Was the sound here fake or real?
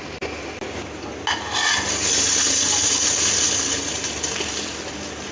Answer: real